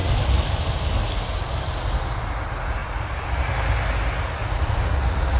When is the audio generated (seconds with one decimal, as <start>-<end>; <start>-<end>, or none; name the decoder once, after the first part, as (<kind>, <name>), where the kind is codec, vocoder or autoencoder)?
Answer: 2.8-3.5 (vocoder, Vocos); 4.4-5.4

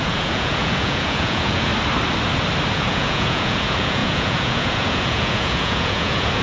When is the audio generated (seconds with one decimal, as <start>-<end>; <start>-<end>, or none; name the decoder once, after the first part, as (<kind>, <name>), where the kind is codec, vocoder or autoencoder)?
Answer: 0.0-1.7 (vocoder, Vocos); 2.7-6.4

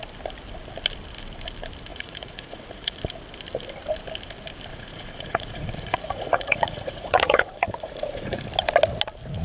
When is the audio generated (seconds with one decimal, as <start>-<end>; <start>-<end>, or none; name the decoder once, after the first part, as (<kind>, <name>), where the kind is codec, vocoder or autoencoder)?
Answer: 1.9-3.0 (vocoder, Vocos); 4.7-8.4

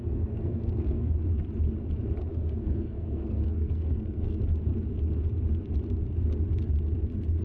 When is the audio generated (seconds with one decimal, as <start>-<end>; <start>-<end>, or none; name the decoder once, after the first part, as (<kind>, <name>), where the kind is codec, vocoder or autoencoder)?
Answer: 0.0-1.1 (codec, SNAC); 2.3-4.4